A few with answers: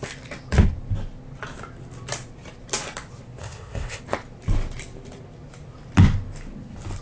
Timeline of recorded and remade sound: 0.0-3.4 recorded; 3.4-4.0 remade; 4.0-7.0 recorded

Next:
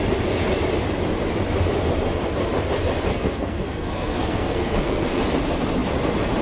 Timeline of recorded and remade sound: 0.0-3.1 recorded; 3.1-5.2 remade; 5.2-6.4 recorded

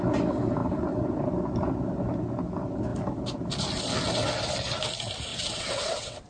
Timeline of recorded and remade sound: 0.0-5.3 recorded; 5.3-6.3 remade

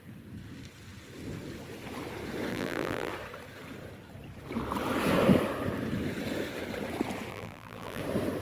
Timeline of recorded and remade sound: 0.0-2.5 recorded; 2.5-3.1 remade; 3.1-7.3 recorded; 7.3-8.0 remade; 8.0-8.4 recorded

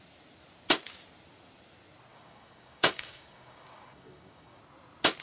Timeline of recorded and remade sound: 0.0-2.1 recorded; 2.1-4.6 remade; 4.6-5.2 recorded